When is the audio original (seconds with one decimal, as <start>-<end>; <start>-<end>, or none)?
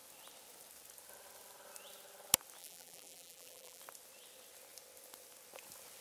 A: 0.0-2.6; 3.8-6.0